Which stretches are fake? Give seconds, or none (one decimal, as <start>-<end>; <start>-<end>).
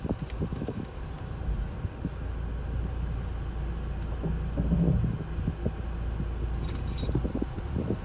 0.5-1.0